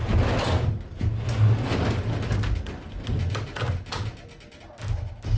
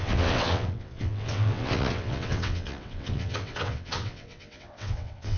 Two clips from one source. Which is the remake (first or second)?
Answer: second